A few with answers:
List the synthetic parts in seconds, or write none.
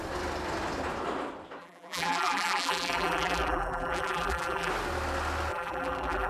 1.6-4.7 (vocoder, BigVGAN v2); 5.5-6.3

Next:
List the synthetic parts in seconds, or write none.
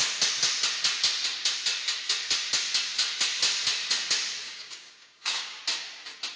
4.4-5.6 (codec, DAC)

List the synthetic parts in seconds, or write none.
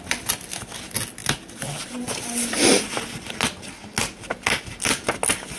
none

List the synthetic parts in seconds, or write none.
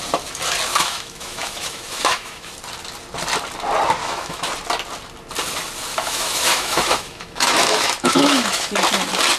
0.7-2.5 (autoencoder, DAC-VAE); 4.0-4.5; 5.9-8.7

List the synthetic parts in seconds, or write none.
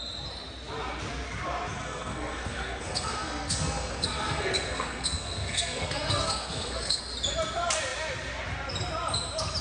1.8-7.0 (codec, SNAC)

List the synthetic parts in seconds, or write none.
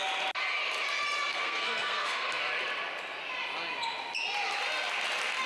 1.3-2.4 (codec, SNAC)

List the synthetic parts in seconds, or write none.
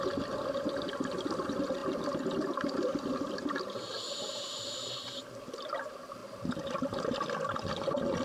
none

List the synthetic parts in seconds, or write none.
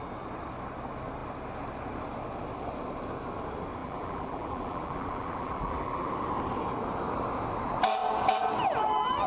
3.8-6.1 (vocoder, BigVGAN v2)